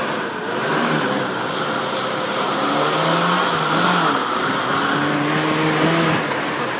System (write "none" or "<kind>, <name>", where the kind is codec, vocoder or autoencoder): none